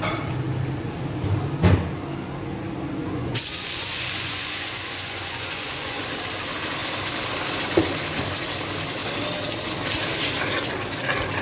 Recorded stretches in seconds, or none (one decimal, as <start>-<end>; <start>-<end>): 0.0-3.0; 6.0-11.4